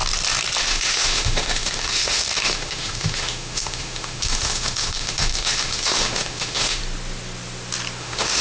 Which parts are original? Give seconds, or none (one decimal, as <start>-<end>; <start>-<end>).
0.0-0.6; 6.8-8.0